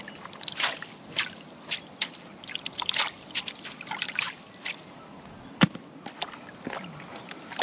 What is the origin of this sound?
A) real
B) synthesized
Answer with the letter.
A